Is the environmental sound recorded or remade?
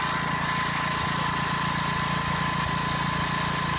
recorded